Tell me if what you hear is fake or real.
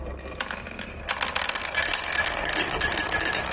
real